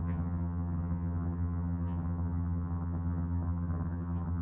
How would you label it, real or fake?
fake